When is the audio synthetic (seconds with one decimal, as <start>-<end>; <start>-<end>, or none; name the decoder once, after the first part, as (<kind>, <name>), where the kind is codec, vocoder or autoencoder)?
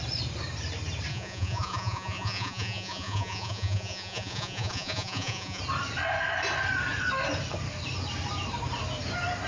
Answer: 1.1-5.6 (vocoder, Vocos)